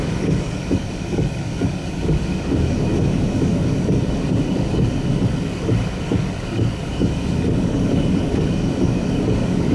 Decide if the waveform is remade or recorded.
remade